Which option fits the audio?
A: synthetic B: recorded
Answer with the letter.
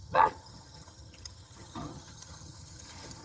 A